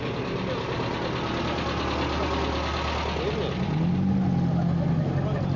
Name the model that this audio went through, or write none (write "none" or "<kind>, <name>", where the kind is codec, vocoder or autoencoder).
none